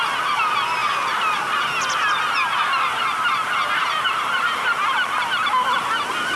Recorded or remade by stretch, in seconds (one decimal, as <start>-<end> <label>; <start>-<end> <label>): 0.0-3.8 recorded; 3.8-5.1 remade; 5.1-6.4 recorded